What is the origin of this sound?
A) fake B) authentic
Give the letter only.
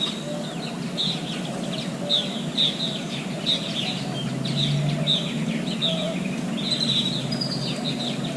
B